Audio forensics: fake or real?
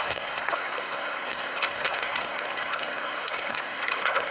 fake